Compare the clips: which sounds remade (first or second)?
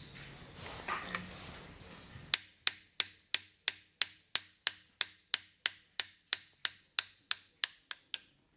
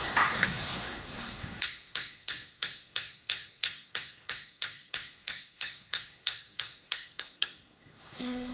second